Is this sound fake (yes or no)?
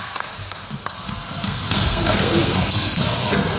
yes